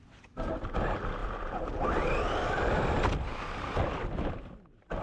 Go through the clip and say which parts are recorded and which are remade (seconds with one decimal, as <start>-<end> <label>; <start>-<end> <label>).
0.0-1.2 recorded; 1.2-2.0 remade; 2.0-2.4 recorded; 2.4-5.0 remade

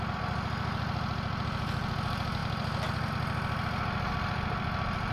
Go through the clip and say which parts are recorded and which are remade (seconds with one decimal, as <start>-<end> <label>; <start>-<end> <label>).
0.0-2.4 recorded; 2.4-3.1 remade; 3.1-5.1 recorded

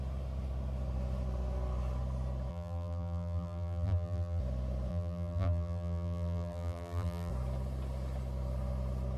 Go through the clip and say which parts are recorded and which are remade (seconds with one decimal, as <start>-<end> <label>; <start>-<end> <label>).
0.0-2.5 recorded; 2.5-4.4 remade; 4.4-4.9 recorded; 4.9-7.3 remade; 7.3-9.2 recorded

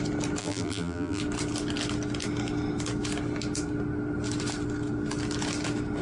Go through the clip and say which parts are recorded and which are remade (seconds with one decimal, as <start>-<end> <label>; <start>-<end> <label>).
0.0-0.4 recorded; 0.4-1.2 remade; 1.2-6.0 recorded

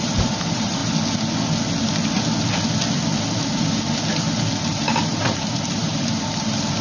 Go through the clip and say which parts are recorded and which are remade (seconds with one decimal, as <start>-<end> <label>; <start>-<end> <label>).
0.0-0.8 remade; 0.8-4.6 recorded; 4.6-6.8 remade

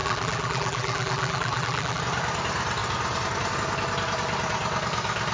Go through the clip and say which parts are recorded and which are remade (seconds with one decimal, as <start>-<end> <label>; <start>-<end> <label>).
0.0-2.0 remade; 2.0-5.3 recorded

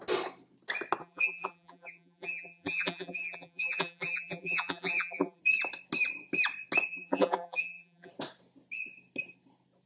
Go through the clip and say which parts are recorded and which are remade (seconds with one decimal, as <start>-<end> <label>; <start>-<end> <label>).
0.0-1.0 recorded; 1.0-5.4 remade; 5.4-6.9 recorded; 6.9-8.1 remade; 8.1-9.9 recorded